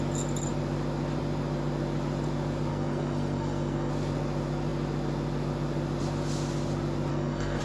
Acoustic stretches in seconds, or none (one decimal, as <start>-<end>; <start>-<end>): 0.0-2.7; 3.9-7.1